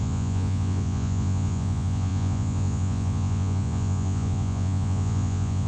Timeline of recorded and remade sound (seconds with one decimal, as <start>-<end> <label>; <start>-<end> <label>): 0.0-5.7 remade